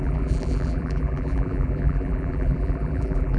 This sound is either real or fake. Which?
fake